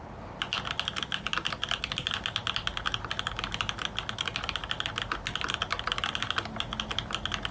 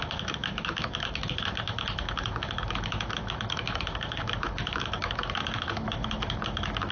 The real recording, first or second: first